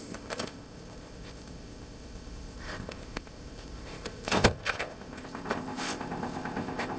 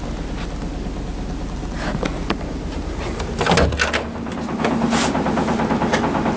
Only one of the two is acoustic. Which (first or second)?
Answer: second